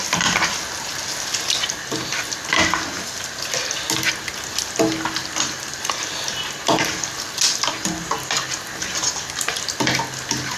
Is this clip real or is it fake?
real